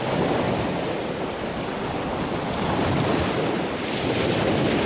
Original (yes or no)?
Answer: yes